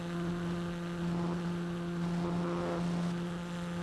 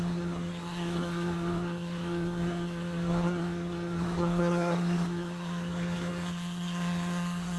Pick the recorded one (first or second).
first